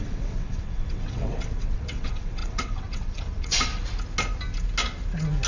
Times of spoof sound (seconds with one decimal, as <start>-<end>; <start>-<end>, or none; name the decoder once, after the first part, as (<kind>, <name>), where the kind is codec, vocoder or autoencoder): 0.0-3.7 (vocoder, WaveNeXt)